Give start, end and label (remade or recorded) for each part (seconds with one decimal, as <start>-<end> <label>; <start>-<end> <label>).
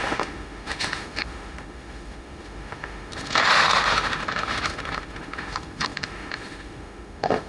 0.0-7.5 remade